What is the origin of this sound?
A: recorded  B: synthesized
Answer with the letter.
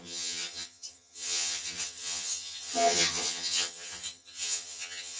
B